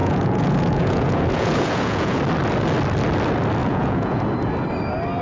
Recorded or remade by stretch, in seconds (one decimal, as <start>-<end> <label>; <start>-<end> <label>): 0.0-2.2 remade; 2.2-3.6 recorded; 3.6-4.2 remade; 4.2-5.2 recorded